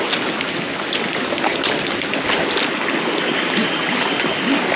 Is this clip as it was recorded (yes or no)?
yes